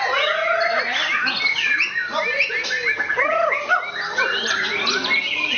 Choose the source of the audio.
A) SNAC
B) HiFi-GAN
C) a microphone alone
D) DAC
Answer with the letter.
C